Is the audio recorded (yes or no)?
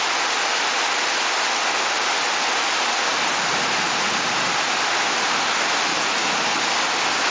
yes